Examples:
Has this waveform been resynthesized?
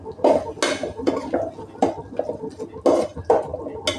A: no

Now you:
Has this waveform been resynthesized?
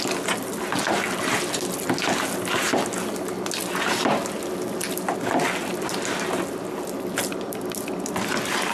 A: no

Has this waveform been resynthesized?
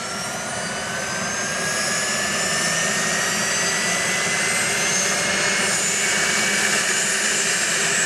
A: no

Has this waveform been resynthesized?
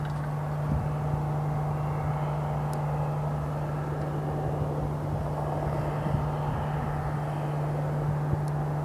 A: no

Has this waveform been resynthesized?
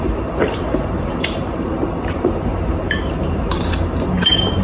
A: yes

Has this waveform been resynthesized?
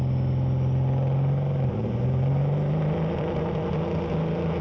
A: no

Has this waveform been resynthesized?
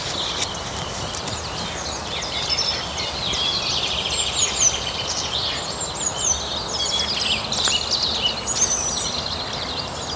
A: no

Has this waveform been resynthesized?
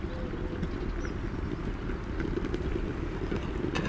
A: no